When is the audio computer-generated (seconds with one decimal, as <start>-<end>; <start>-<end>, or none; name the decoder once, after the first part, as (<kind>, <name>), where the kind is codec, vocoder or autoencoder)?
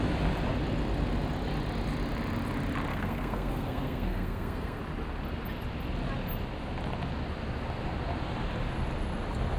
2.9-4.8 (codec, SNAC)